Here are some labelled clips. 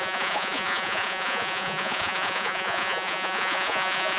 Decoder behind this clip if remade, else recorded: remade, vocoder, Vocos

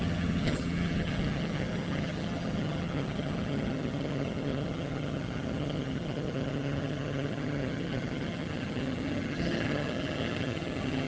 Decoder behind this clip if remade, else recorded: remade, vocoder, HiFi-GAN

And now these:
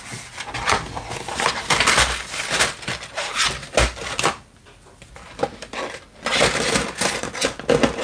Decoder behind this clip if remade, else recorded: recorded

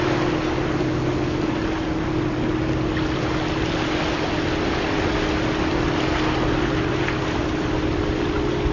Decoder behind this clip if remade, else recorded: recorded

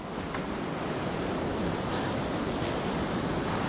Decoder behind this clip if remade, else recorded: recorded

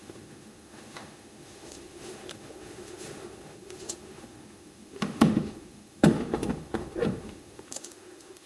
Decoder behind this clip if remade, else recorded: remade, autoencoder, DAC-VAE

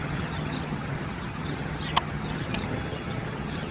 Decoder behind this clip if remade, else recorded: remade, vocoder, HiFi-GAN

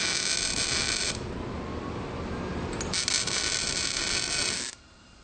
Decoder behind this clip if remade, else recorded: recorded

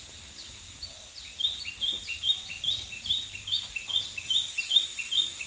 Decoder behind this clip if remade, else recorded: recorded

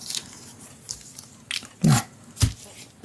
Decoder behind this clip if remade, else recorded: recorded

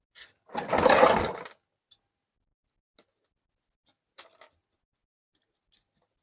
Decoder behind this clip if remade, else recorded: recorded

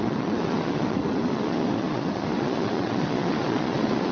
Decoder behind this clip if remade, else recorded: remade, vocoder, Vocos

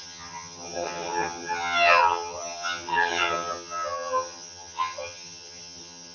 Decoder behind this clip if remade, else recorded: remade, vocoder, HiFi-GAN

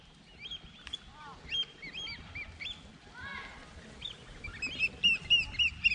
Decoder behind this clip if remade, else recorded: recorded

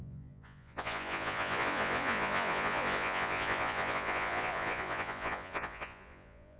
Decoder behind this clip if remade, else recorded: remade, vocoder, Vocos